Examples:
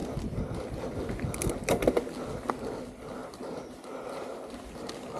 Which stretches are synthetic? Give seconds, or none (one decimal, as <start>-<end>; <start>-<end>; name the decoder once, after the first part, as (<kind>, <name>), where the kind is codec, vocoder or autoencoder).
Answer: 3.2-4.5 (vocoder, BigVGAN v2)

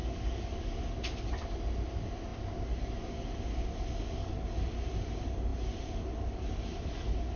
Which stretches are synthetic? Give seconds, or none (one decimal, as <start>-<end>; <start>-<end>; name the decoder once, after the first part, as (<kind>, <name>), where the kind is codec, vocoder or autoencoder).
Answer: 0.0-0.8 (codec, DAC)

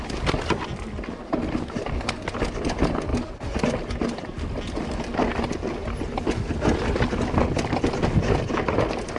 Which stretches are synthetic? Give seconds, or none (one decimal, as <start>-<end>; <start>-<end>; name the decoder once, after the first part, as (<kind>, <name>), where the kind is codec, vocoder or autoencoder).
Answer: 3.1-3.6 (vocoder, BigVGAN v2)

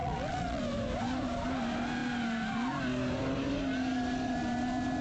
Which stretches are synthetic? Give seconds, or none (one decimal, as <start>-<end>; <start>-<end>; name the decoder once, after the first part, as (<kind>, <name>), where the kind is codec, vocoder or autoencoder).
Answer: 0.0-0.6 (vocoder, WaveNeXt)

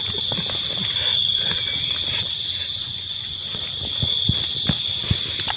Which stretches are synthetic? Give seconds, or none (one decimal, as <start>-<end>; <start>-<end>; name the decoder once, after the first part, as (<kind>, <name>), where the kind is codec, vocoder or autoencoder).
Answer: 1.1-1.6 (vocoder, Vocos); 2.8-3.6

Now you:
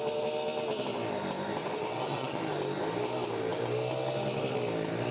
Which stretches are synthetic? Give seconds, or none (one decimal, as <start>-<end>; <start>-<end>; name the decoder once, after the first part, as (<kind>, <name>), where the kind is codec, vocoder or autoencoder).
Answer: 1.6-2.4 (vocoder, WaveNeXt)

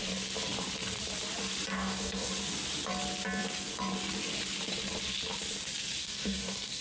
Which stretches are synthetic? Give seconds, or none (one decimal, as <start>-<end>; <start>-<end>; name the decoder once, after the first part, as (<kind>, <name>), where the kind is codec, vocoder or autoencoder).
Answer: 1.7-2.3 (codec, DAC); 6.0-6.8